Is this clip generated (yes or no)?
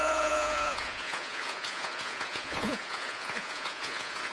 yes